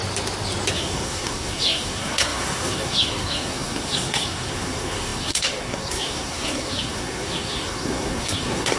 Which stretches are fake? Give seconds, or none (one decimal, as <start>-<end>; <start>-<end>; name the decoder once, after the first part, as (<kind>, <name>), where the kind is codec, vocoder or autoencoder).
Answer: 0.7-8.8 (codec, SNAC)